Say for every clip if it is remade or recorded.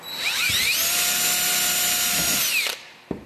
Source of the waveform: recorded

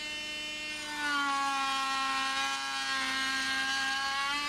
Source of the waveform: recorded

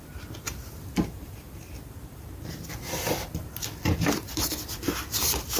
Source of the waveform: recorded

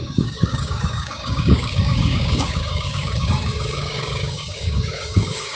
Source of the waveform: remade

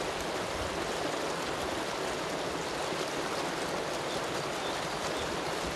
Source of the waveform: recorded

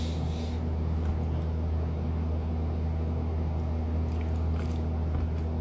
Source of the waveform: recorded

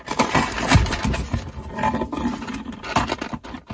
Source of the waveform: recorded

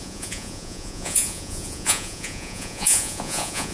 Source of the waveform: remade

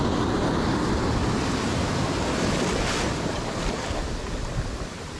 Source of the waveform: recorded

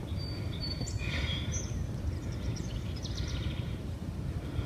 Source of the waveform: recorded